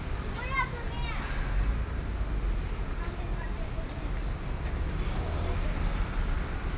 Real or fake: real